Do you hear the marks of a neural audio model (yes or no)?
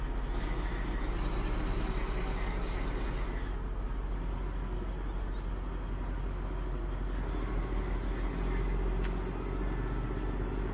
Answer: no